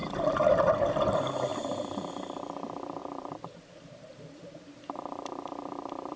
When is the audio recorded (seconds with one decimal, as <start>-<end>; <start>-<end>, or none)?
0.6-1.5; 2.1-3.0